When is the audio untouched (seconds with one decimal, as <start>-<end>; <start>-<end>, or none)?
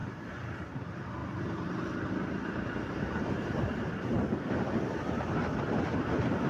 none